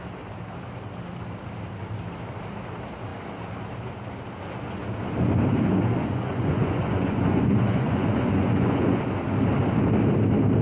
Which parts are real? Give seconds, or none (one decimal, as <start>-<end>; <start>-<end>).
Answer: 0.0-6.0; 9.0-10.6